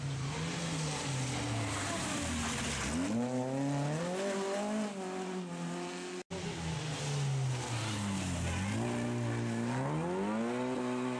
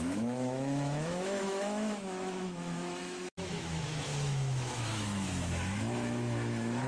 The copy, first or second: second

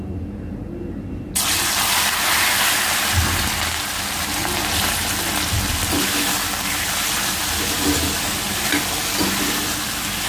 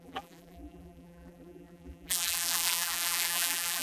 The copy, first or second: second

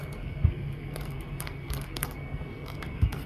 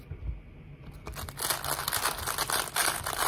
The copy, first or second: first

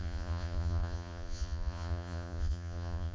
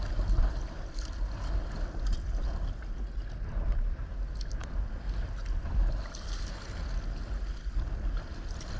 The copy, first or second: first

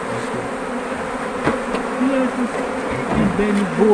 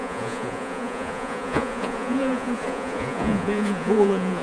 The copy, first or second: second